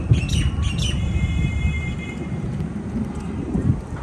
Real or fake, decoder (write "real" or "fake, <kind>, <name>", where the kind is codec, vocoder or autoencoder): real